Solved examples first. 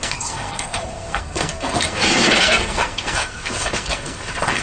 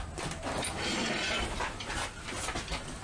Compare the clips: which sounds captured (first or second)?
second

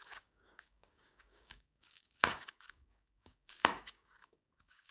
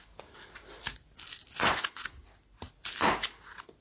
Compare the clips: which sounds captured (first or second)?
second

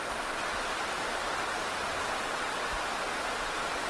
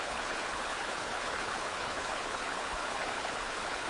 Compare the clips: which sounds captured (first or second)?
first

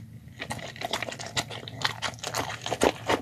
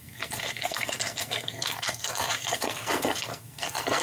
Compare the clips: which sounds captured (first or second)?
first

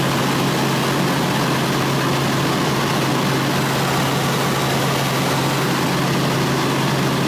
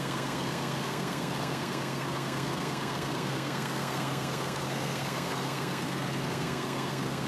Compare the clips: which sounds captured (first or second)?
first